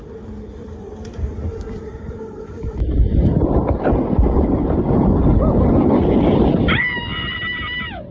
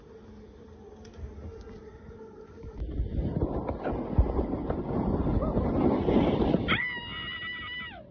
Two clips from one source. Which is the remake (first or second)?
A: first